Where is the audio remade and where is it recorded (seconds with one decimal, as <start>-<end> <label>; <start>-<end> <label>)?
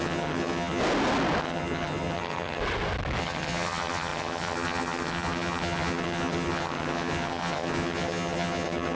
0.0-0.8 remade; 0.8-1.4 recorded; 1.4-2.6 remade; 2.6-3.2 recorded; 3.2-9.0 remade